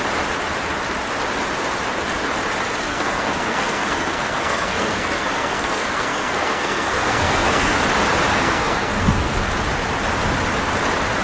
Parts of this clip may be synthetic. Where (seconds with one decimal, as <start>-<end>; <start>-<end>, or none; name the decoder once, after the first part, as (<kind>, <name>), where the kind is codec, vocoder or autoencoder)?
2.8-7.8 (codec, SNAC); 8.3-9.5